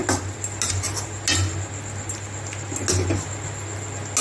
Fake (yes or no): no